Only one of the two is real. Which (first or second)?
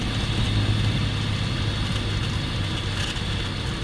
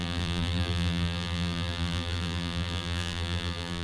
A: first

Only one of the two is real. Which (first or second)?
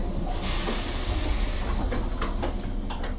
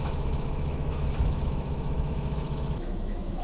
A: first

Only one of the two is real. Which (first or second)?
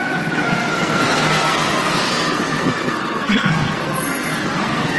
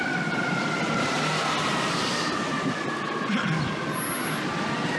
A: second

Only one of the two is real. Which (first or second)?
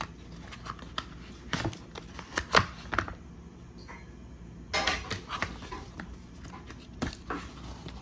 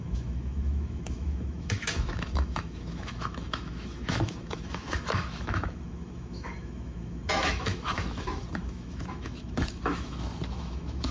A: first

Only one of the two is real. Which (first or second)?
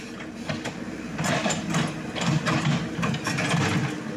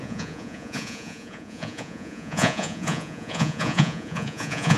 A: first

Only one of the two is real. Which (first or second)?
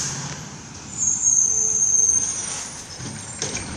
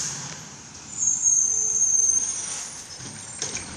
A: first